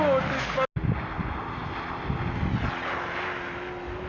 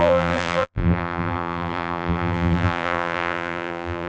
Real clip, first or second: first